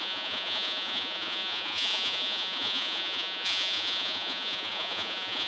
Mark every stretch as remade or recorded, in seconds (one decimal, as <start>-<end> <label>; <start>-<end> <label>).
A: 0.0-5.5 remade